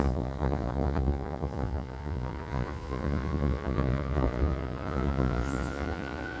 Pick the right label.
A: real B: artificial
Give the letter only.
B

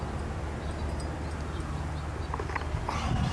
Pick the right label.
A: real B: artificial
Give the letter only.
A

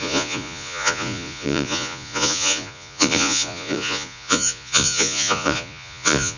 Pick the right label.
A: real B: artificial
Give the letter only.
B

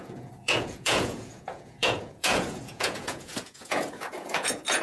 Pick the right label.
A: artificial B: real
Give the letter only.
A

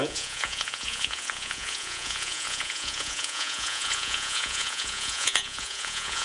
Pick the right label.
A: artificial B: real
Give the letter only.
A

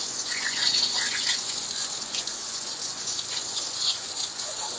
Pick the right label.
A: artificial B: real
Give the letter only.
A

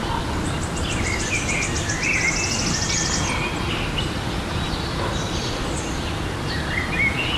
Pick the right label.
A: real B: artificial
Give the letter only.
A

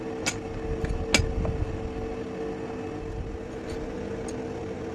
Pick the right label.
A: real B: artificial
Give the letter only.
A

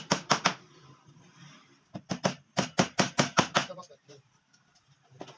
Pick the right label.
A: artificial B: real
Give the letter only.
B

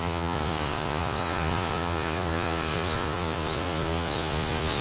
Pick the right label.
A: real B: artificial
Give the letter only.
B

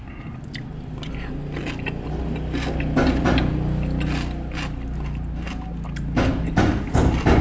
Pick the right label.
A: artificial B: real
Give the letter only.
B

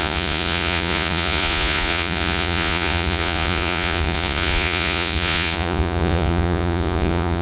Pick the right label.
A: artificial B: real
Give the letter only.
A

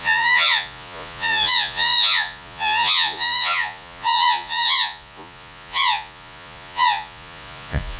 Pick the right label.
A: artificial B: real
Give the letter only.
A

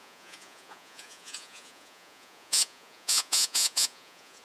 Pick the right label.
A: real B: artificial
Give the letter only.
B